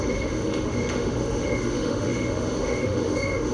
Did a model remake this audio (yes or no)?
yes